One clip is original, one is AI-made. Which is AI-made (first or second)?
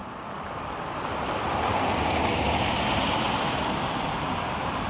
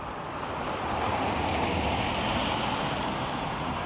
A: first